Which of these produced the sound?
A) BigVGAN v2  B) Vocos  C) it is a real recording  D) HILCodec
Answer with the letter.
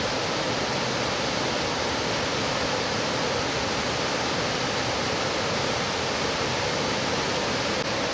C